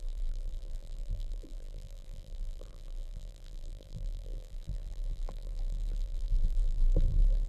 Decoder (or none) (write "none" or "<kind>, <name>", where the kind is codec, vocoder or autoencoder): vocoder, BigVGAN v2